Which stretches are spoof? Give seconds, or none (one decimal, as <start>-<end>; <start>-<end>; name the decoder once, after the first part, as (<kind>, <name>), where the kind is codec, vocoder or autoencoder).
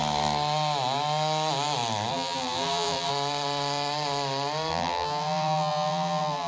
2.1-3.1 (vocoder, BigVGAN v2); 4.7-6.5